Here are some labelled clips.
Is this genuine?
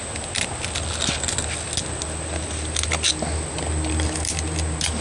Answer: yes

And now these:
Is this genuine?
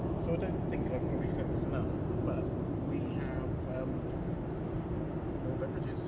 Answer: yes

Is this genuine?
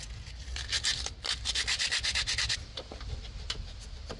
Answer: yes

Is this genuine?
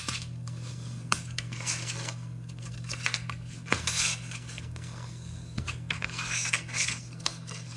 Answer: no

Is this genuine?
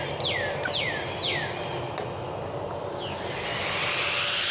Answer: yes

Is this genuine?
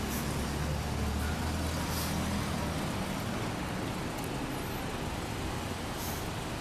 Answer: yes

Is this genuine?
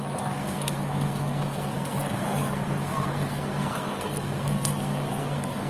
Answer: no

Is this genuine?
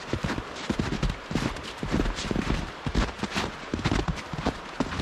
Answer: no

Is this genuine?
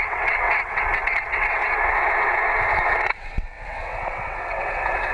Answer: no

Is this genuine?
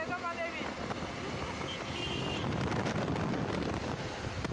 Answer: yes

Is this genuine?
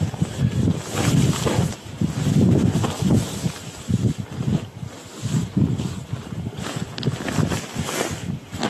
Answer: yes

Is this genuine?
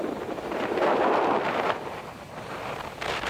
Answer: yes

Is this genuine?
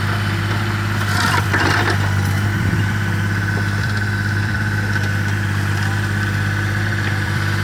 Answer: no